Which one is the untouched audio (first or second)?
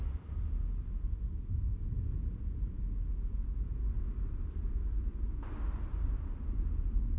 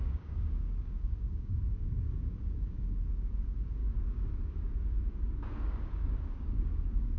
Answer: first